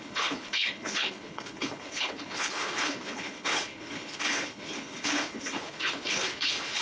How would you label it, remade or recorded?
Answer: remade